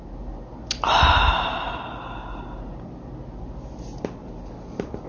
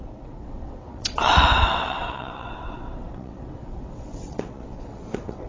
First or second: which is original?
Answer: first